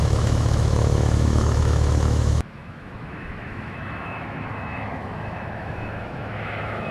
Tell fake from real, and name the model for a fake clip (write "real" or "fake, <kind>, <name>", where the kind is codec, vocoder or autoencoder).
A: fake, autoencoder, DAC-VAE